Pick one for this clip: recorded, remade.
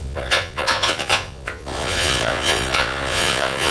remade